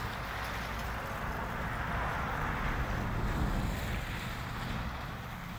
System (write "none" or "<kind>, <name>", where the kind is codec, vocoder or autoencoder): none